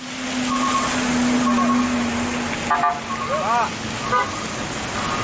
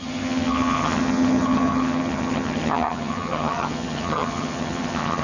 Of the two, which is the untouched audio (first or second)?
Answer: first